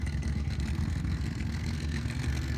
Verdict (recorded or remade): remade